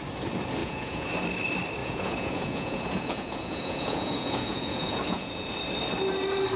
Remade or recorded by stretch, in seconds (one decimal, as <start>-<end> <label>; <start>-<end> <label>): 0.0-0.6 recorded; 0.6-1.1 remade; 1.1-1.8 recorded; 1.8-5.5 remade; 5.5-6.6 recorded